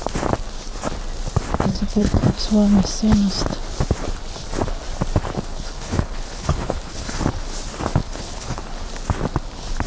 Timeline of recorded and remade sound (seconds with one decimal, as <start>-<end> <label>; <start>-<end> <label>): 0.0-1.7 recorded; 1.7-2.4 remade; 2.4-5.5 recorded; 5.5-7.2 remade; 7.2-8.0 recorded; 8.0-8.6 remade; 8.6-9.9 recorded